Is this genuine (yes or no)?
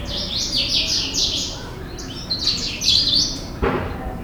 no